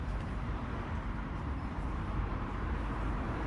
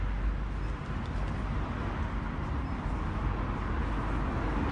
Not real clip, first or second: first